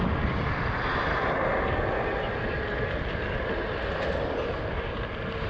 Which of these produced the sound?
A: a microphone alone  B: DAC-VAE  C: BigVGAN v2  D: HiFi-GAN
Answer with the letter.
A